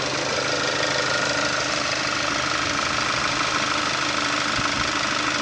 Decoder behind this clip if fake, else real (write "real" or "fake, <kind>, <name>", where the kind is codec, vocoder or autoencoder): real